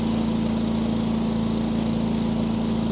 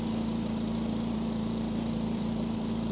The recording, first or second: first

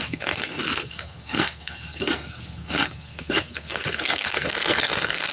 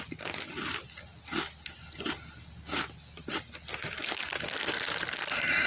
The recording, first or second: second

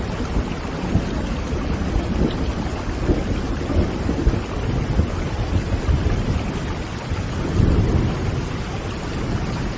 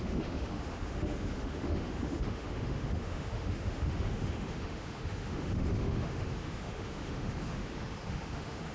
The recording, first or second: first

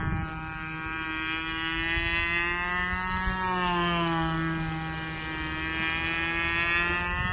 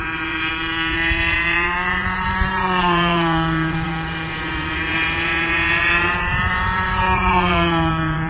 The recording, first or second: first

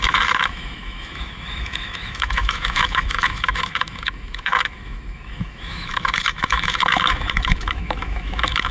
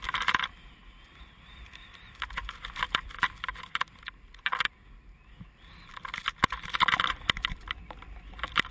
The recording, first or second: second